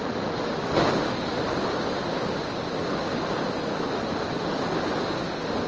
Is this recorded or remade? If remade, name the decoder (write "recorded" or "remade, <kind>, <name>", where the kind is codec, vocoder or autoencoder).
recorded